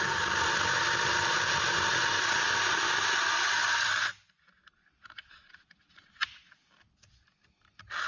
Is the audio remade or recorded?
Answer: recorded